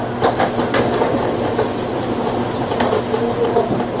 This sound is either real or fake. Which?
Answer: real